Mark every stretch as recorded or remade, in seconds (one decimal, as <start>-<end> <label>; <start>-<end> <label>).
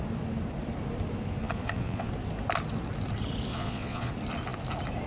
0.0-1.4 recorded; 1.4-2.1 remade; 2.1-3.5 recorded; 3.5-4.1 remade; 4.1-5.1 recorded